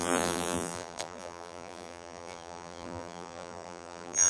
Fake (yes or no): yes